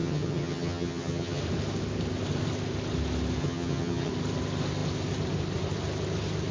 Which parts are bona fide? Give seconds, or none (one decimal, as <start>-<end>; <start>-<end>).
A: 1.4-3.4; 4.1-6.5